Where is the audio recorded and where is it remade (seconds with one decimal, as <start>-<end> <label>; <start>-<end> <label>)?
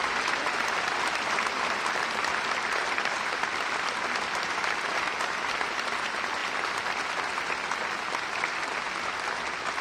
0.0-4.0 remade; 4.0-9.8 recorded